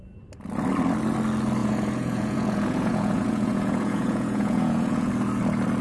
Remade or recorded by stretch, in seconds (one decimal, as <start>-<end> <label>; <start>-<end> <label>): 0.0-1.6 recorded; 1.6-5.1 remade; 5.1-5.8 recorded